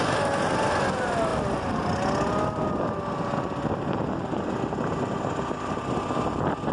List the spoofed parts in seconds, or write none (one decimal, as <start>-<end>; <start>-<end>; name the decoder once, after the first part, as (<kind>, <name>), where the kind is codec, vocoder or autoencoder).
none